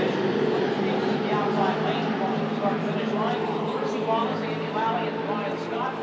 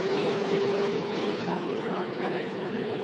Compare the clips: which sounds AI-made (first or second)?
second